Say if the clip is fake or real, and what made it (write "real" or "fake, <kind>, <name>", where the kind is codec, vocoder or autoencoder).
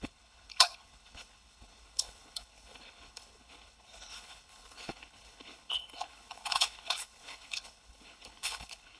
fake, codec, HILCodec